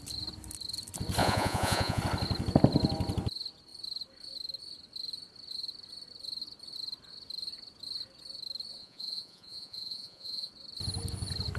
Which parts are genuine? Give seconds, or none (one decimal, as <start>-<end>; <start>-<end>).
0.0-1.2; 2.0-8.8; 10.5-11.6